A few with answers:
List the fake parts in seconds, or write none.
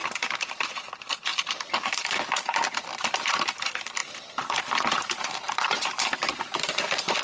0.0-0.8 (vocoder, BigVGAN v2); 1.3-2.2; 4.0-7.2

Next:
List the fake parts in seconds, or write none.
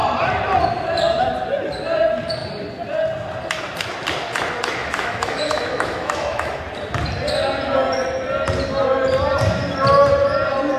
4.8-6.6 (autoencoder, DAC-VAE)